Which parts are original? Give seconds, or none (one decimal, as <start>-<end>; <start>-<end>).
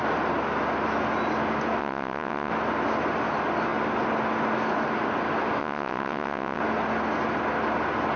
0.0-1.8; 2.5-5.6; 6.6-8.2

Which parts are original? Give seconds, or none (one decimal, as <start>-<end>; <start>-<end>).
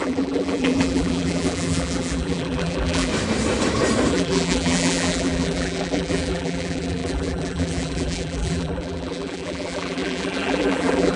3.1-4.1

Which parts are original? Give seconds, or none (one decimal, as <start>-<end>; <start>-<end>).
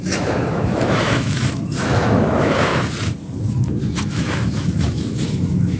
2.7-3.5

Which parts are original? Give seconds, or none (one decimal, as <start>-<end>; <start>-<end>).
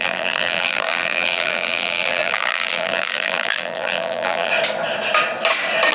4.5-5.9